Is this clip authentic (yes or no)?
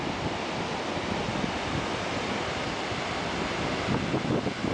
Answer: yes